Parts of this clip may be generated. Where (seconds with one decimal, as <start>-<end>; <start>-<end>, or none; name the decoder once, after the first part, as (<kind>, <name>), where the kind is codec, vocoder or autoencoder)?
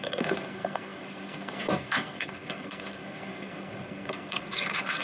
0.0-5.0 (codec, SNAC)